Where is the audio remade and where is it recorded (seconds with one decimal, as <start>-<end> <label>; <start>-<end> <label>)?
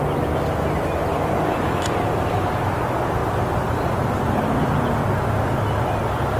0.0-1.1 recorded; 1.1-2.4 remade; 2.4-3.2 recorded; 3.2-4.4 remade; 4.4-6.4 recorded